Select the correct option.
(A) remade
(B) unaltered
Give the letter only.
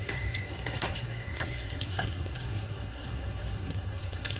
A